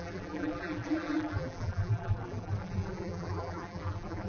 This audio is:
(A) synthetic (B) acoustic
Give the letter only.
A